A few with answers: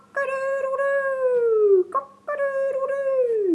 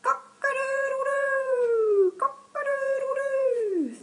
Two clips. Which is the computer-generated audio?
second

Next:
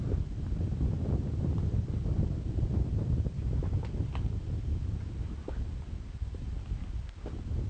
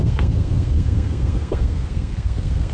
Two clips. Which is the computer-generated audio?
second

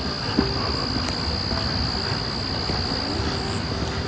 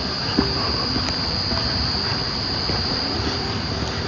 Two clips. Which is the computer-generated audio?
second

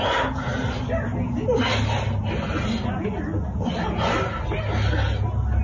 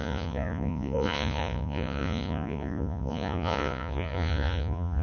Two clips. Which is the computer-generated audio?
second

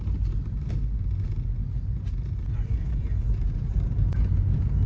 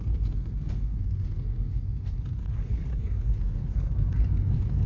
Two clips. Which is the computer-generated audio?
second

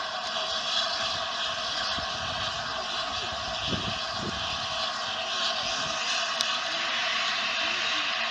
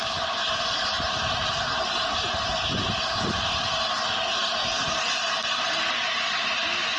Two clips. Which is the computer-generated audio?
second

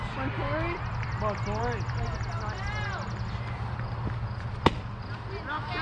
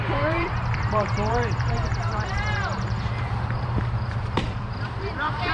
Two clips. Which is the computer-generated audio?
second